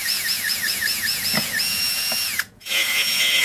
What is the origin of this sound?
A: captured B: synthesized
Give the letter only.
B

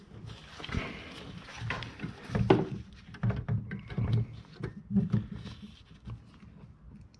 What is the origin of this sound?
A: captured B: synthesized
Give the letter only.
A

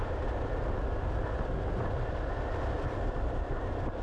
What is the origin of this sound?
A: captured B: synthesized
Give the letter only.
B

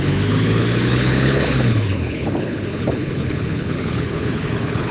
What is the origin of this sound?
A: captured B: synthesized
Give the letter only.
B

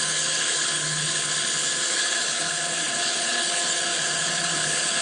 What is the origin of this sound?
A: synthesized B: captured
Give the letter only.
A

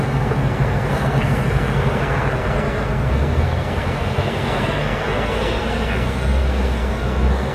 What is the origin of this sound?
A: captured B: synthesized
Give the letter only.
B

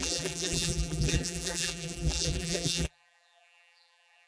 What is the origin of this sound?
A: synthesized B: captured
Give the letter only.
A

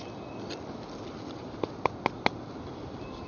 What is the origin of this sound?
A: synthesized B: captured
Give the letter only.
B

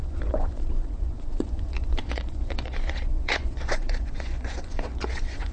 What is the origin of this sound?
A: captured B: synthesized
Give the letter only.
B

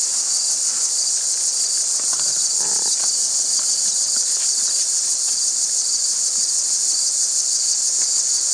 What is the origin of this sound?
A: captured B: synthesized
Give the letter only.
A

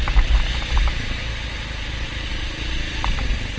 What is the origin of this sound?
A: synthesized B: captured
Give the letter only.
B